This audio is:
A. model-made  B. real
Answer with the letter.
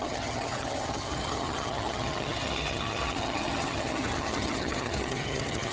A